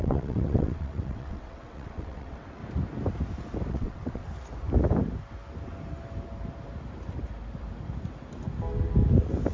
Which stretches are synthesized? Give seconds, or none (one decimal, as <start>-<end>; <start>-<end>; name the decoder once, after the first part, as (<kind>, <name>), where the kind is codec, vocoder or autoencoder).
0.0-2.6 (vocoder, WaveNeXt); 3.7-4.2

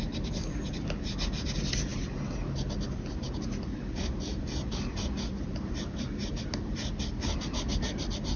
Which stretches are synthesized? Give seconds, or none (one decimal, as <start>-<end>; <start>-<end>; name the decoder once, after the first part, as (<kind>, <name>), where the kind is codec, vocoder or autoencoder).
none

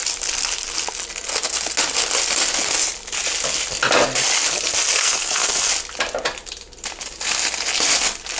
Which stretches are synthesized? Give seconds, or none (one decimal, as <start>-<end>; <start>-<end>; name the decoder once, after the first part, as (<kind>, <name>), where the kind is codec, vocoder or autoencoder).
5.0-5.7 (codec, SNAC)

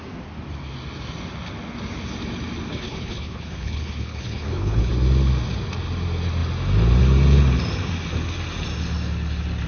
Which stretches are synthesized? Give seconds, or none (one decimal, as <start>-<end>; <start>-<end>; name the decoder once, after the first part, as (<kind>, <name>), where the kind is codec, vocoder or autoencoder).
2.7-4.9 (codec, HILCodec)

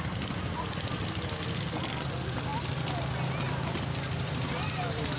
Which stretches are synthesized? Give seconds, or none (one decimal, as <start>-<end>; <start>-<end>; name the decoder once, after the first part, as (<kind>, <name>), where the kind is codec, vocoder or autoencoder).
none

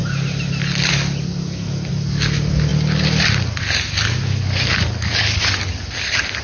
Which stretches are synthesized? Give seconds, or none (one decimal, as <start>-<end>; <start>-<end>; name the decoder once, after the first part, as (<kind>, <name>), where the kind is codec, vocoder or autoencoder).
none

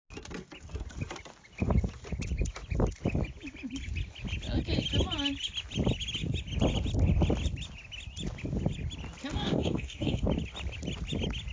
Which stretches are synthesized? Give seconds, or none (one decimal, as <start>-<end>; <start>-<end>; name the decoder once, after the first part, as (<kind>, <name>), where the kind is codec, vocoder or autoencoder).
9.3-10.2 (codec, DAC)

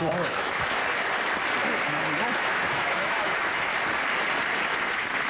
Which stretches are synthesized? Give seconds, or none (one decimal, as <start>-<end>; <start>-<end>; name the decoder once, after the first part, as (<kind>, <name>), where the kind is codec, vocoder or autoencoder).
0.0-0.8 (autoencoder, DAC-VAE); 2.4-3.7; 4.8-5.3